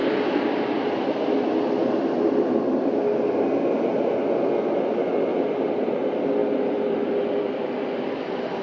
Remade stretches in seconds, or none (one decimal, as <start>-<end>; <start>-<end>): 0.0-1.0; 5.3-6.0; 6.4-8.6

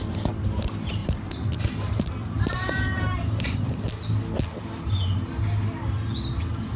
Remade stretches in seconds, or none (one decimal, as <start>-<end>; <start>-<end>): 1.0-3.8

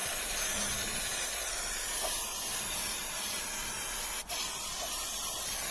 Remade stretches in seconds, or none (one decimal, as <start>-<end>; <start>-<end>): 0.0-1.3; 3.0-4.0